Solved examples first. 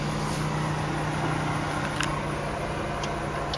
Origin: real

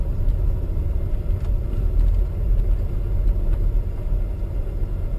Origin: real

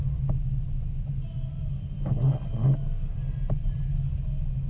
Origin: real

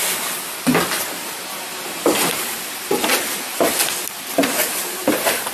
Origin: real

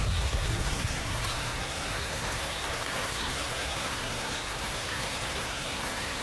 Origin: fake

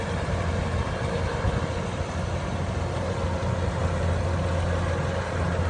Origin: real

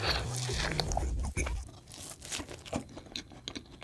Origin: real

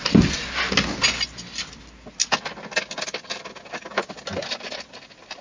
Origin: real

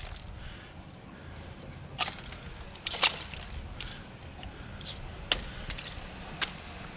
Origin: real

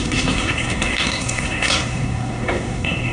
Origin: fake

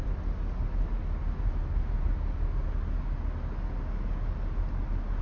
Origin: real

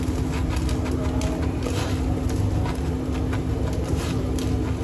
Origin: real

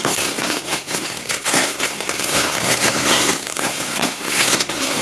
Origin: fake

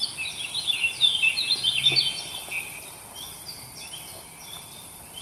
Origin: real